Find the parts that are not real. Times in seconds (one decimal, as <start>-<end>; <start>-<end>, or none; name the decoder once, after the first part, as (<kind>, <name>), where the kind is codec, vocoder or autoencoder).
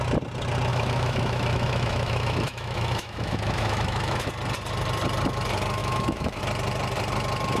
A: 0.7-4.3 (autoencoder, DAC-VAE); 5.8-6.4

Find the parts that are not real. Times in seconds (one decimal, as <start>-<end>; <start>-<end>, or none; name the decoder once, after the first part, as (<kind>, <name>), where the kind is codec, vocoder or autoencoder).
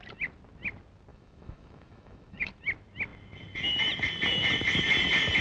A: 1.1-2.5 (autoencoder, DAC-VAE)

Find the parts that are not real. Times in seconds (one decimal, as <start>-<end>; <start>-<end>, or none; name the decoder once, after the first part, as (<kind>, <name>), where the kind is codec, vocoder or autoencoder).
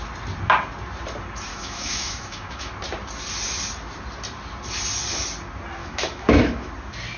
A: 1.5-2.7 (autoencoder, DAC-VAE); 5.8-6.7